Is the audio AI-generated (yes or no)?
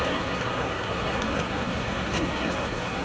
yes